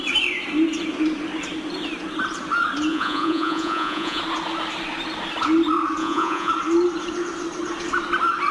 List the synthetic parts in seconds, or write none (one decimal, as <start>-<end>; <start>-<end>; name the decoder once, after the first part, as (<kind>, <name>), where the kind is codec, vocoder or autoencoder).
2.9-4.2 (vocoder, Vocos); 6.0-6.5